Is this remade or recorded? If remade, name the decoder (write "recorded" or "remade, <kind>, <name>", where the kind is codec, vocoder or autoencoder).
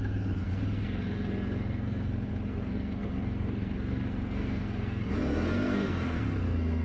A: remade, codec, SNAC